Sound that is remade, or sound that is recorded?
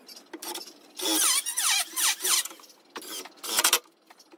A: recorded